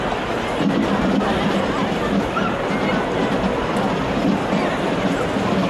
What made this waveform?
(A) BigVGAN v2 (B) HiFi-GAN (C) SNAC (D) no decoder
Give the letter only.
D